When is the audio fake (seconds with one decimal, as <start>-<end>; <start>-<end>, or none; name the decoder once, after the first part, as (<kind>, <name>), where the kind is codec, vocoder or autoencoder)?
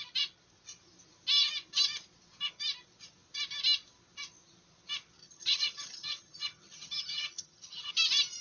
5.2-7.9 (vocoder, HiFi-GAN)